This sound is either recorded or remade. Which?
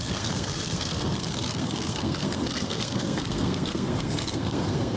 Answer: remade